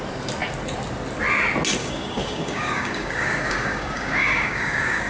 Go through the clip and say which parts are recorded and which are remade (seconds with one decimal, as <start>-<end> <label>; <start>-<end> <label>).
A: 0.0-1.8 recorded; 1.8-5.1 remade